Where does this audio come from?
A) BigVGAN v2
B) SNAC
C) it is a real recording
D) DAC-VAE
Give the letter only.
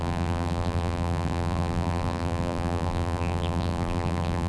A